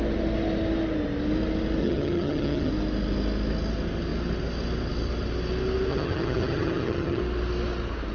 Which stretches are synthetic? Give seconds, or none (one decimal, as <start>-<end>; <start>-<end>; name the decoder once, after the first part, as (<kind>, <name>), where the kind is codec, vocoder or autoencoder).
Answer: 1.8-2.7 (vocoder, HiFi-GAN); 5.9-7.2